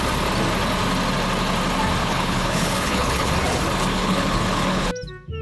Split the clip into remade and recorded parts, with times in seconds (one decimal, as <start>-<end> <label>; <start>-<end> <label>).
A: 0.0-2.0 recorded; 2.0-3.3 remade; 3.3-3.9 recorded; 3.9-4.9 remade; 4.9-5.4 recorded